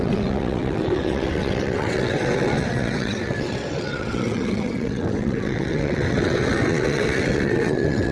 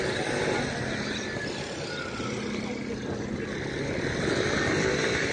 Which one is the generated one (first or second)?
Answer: first